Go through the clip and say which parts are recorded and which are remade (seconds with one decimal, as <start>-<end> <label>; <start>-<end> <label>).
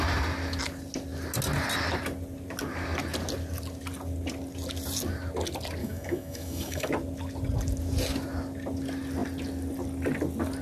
0.0-5.8 recorded; 5.8-6.9 remade; 6.9-10.6 recorded